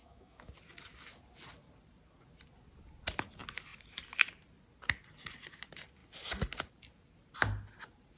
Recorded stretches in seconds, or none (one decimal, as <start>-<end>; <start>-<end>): 0.5-8.2